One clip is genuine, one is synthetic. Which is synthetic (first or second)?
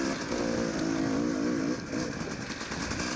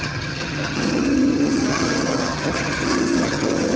second